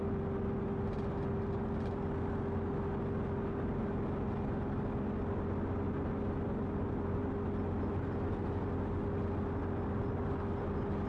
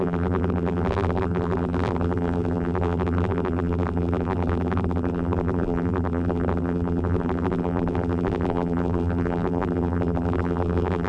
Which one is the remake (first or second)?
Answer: second